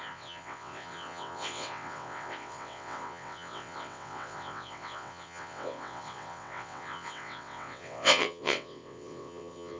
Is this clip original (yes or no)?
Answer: no